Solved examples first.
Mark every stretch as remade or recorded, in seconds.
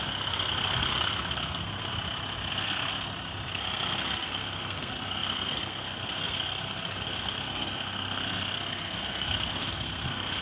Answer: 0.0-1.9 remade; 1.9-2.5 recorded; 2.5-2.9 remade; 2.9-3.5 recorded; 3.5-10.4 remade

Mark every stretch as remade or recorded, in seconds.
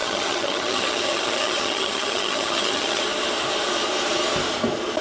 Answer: 0.0-3.0 remade; 3.0-5.0 recorded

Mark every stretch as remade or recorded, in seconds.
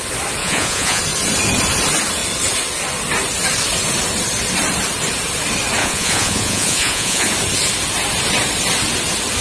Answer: 0.0-0.4 recorded; 0.4-1.0 remade; 1.0-5.8 recorded; 5.8-7.3 remade; 7.3-9.4 recorded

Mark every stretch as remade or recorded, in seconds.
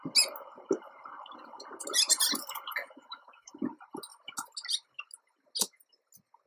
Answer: 0.0-2.8 recorded; 2.8-3.5 remade; 3.5-6.5 recorded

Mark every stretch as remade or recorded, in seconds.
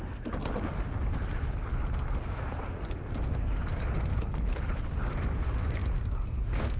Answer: 0.0-4.1 recorded; 4.1-4.9 remade; 4.9-6.8 recorded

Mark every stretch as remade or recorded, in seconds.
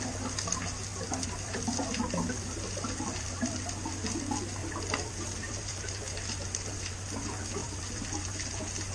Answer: 0.0-0.9 recorded; 0.9-3.5 remade; 3.5-4.6 recorded; 4.6-5.9 remade; 5.9-7.6 recorded; 7.6-8.9 remade